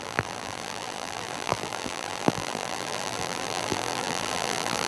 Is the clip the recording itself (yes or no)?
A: no